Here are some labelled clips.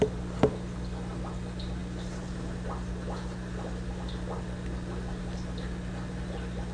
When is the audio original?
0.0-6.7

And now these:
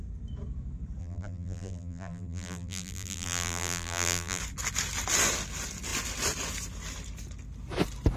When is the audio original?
0.0-1.0; 4.4-8.2

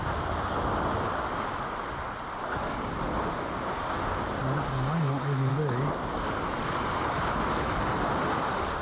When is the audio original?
0.0-8.8

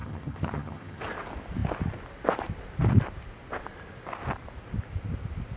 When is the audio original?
1.0-5.6

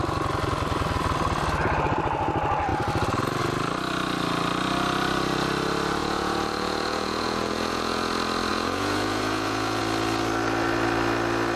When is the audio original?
0.0-6.0; 8.1-8.5; 9.8-11.6

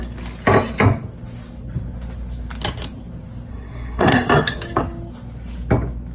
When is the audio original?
0.0-3.5; 4.3-6.1

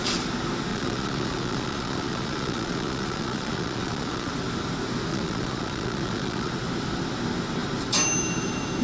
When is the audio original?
0.0-0.7; 4.3-5.1; 6.5-8.8